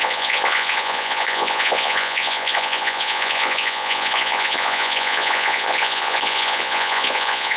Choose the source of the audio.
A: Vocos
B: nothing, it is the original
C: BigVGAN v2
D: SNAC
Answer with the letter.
A